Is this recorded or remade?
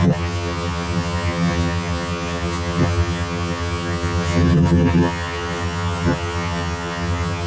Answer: remade